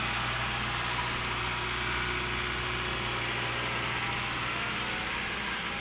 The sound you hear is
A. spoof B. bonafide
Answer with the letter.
B